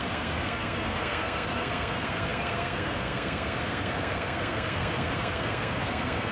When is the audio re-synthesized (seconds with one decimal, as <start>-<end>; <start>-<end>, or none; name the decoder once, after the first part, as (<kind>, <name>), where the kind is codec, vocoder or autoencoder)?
0.0-6.3 (codec, SNAC)